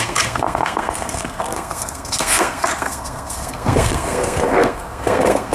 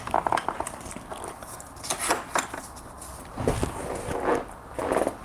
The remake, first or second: first